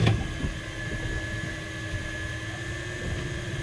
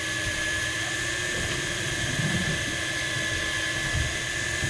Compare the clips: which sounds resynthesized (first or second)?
second